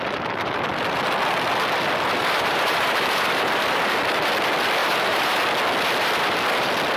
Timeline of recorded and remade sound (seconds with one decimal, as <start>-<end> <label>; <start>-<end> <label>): 0.0-2.2 recorded; 2.2-3.8 remade; 3.8-4.8 recorded; 4.8-5.4 remade; 5.4-7.0 recorded